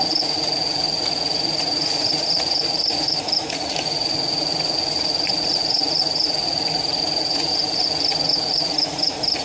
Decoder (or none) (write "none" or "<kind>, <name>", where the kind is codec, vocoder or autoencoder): vocoder, Vocos